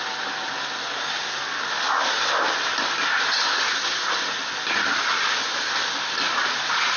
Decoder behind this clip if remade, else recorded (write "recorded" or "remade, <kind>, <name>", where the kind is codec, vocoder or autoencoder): recorded